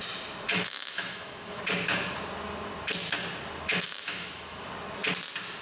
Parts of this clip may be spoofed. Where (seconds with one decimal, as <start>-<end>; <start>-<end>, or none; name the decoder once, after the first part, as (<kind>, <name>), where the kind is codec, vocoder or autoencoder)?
0.5-1.6 (autoencoder, DAC-VAE); 3.7-4.7

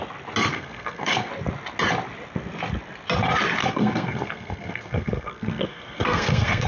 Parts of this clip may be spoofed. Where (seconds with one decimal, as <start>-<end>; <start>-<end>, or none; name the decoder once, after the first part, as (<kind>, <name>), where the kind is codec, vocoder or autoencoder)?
0.5-1.3 (codec, SNAC); 3.6-6.7